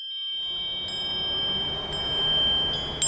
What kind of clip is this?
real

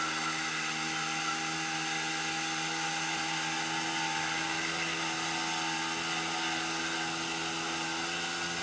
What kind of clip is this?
real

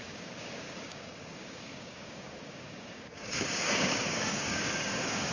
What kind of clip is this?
fake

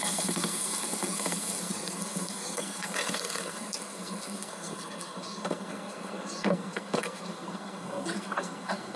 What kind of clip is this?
fake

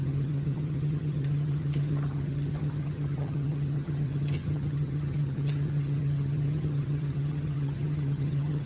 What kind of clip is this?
fake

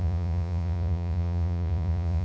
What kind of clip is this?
fake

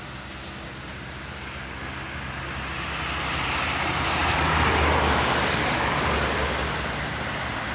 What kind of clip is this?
real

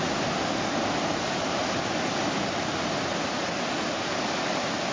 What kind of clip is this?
real